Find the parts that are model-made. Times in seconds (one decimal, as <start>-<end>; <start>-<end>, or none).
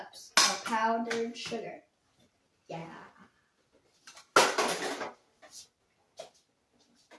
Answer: none